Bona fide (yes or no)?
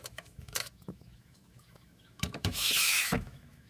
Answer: no